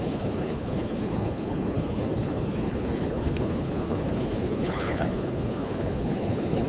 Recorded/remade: remade